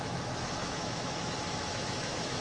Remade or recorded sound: remade